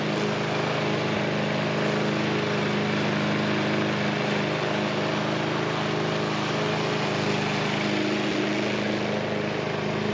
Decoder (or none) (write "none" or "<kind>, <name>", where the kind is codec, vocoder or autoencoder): none